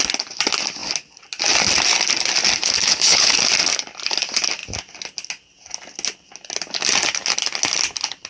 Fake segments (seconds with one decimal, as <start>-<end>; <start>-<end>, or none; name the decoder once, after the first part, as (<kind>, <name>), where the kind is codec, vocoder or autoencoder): 2.8-3.4 (codec, HILCodec)